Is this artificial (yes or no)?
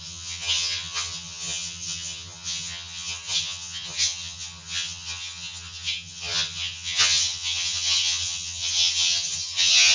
yes